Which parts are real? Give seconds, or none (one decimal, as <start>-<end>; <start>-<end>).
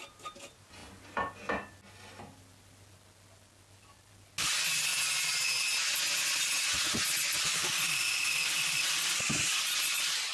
0.0-10.3